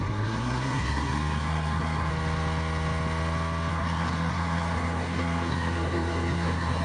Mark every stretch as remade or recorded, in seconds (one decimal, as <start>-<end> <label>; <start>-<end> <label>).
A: 0.0-2.1 remade; 2.1-3.7 recorded; 3.7-6.8 remade